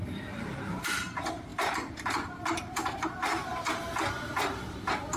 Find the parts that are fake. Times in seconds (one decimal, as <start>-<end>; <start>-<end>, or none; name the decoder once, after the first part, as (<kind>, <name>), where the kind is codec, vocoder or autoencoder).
0.0-3.5 (vocoder, BigVGAN v2); 4.2-5.2